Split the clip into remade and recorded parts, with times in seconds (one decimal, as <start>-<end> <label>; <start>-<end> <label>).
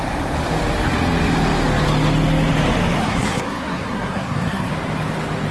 0.0-3.0 recorded; 3.0-4.7 remade; 4.7-5.5 recorded